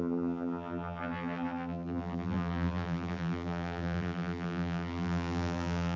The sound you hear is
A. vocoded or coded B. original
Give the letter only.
A